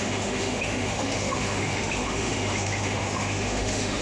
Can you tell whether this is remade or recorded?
remade